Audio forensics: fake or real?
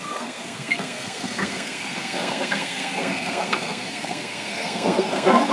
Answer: fake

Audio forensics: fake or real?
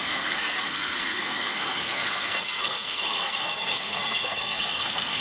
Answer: fake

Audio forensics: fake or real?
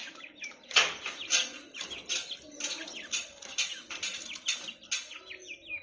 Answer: real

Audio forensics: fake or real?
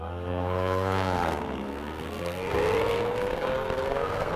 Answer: fake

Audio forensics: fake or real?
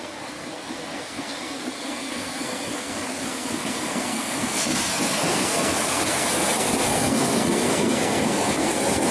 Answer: fake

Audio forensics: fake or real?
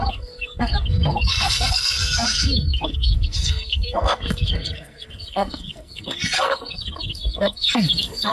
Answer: fake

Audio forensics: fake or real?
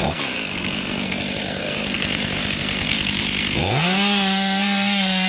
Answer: fake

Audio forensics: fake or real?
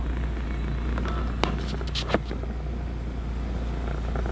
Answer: real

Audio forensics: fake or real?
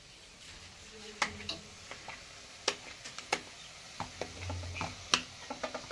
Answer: real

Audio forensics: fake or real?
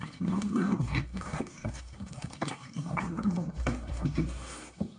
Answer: fake